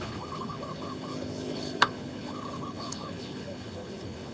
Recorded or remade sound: remade